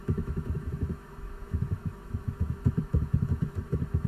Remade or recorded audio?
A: remade